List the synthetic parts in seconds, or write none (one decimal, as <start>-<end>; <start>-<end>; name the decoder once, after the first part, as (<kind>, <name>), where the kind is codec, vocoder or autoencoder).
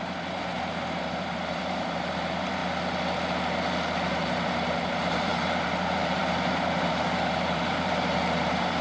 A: 0.0-2.6 (vocoder, BigVGAN v2); 4.1-8.8